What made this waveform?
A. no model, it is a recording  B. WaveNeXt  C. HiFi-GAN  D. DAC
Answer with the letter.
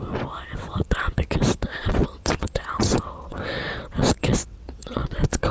B